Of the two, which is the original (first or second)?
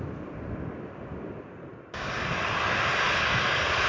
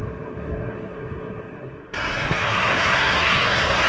first